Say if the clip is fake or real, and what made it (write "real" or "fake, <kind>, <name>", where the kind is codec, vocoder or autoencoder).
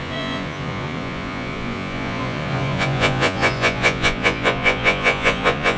fake, vocoder, Vocos